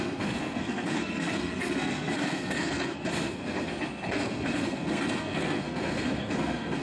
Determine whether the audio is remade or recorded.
remade